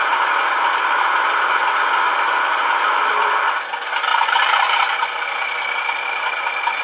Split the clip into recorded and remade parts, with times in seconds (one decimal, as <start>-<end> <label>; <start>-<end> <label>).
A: 0.0-6.8 recorded